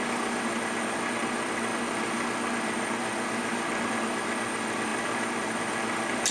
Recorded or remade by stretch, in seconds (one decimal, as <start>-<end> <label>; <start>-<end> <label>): 0.0-6.3 recorded